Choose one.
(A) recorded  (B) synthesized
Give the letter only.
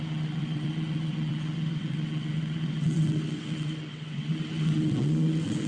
B